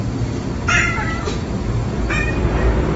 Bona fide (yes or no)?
no